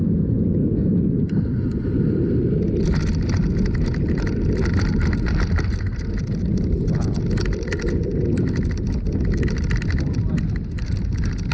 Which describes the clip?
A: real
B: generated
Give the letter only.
A